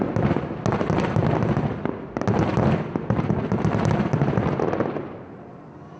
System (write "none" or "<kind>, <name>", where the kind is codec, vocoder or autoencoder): none